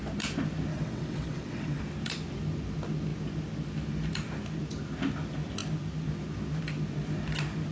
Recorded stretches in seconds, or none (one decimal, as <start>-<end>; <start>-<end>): 0.0-0.7; 1.8-7.7